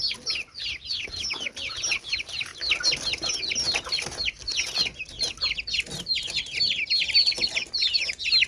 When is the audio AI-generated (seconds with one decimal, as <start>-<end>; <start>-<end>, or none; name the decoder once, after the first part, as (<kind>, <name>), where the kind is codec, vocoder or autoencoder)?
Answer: none